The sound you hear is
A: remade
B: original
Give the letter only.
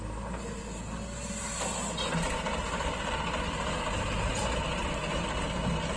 B